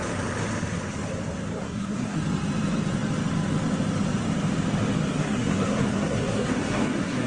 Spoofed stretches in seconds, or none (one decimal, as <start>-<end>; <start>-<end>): 1.6-2.2; 5.2-7.3